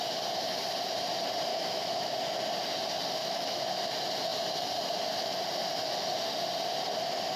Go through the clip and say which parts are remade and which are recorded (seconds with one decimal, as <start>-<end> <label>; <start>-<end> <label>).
0.0-1.5 recorded; 1.5-2.1 remade; 2.1-3.2 recorded; 3.2-3.8 remade; 3.8-7.4 recorded